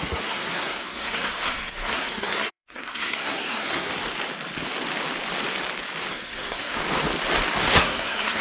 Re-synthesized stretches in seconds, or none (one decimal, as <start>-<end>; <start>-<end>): 0.0-3.9; 6.1-6.8; 7.7-8.4